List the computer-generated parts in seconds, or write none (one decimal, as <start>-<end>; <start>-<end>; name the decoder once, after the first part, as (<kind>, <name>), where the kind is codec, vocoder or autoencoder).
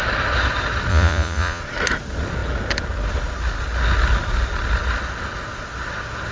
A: 0.9-1.6 (vocoder, Vocos)